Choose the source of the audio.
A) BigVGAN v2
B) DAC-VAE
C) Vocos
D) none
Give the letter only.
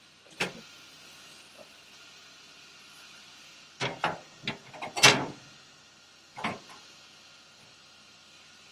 D